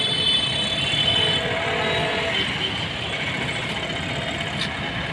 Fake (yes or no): no